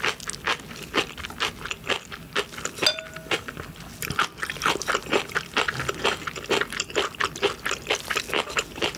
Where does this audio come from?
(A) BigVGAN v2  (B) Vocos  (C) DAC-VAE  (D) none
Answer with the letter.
D